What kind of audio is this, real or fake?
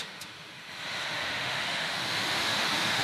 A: fake